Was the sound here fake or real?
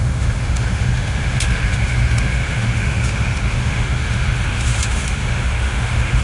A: fake